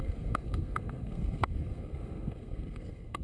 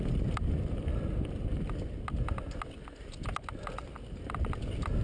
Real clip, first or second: second